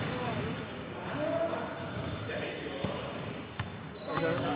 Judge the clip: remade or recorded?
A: remade